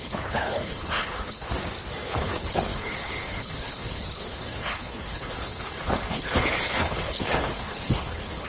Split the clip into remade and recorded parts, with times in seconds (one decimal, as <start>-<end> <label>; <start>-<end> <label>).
0.0-1.5 remade; 1.5-2.2 recorded; 2.2-8.5 remade

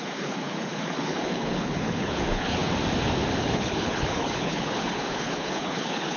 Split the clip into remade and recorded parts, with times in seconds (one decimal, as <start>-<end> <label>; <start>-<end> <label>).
0.0-2.6 remade; 2.6-3.4 recorded; 3.4-6.2 remade

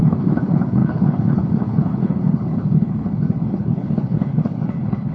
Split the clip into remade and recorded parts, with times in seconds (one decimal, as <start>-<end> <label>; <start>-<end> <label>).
0.0-5.1 remade

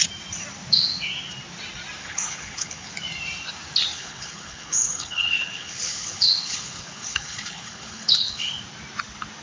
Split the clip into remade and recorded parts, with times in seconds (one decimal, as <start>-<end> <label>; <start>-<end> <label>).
0.0-2.0 recorded; 2.0-2.9 remade; 2.9-3.9 recorded; 3.9-8.5 remade; 8.5-9.4 recorded

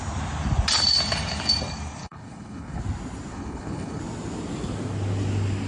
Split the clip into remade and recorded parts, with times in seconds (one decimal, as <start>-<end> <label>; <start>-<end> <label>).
0.0-2.0 recorded; 2.0-2.8 remade; 2.8-3.3 recorded; 3.3-4.0 remade; 4.0-5.7 recorded

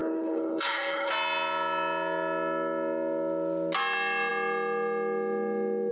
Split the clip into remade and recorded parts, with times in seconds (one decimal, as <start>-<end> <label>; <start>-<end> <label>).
0.0-1.1 remade; 1.1-5.9 recorded

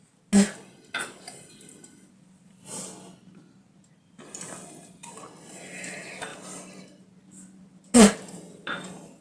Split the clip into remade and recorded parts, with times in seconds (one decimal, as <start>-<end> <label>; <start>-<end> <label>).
0.0-9.2 recorded

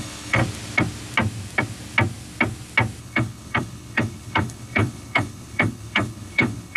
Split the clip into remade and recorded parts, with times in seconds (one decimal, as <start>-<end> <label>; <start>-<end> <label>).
0.0-0.4 remade; 0.4-3.0 recorded; 3.0-6.8 remade